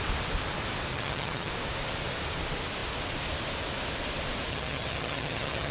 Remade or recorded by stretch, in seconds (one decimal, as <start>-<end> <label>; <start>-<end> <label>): 0.0-0.9 recorded; 0.9-1.5 remade; 1.5-4.5 recorded; 4.5-5.7 remade